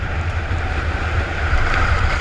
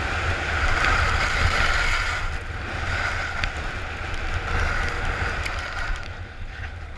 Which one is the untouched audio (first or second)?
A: second